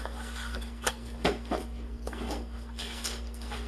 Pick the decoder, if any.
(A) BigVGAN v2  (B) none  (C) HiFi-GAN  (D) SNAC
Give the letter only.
D